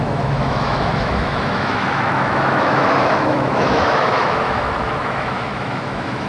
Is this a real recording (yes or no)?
no